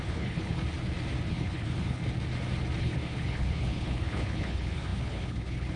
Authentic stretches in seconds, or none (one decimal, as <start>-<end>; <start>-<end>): 0.6-1.3; 2.0-2.8